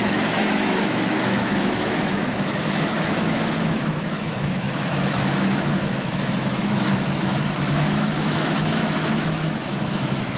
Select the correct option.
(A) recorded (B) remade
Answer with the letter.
B